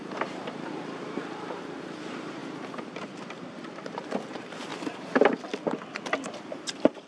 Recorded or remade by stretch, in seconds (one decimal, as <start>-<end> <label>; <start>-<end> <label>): 0.0-2.4 remade; 2.4-3.3 recorded; 3.3-4.7 remade; 4.7-6.5 recorded; 6.5-7.1 remade